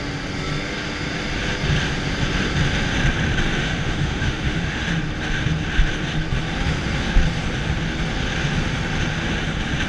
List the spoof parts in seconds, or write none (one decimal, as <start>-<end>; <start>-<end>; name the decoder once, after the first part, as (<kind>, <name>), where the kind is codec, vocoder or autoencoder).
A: 3.6-4.9 (autoencoder, DAC-VAE)